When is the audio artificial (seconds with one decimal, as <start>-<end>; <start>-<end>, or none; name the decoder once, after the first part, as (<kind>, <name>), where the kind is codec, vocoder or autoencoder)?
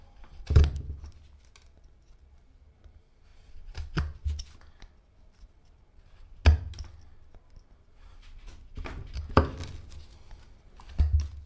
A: none